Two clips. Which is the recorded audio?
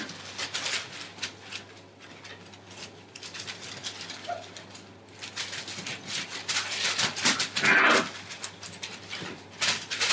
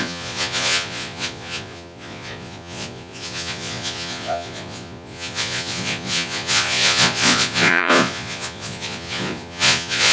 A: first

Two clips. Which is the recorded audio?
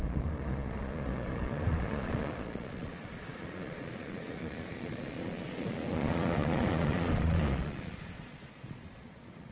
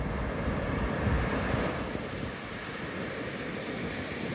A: second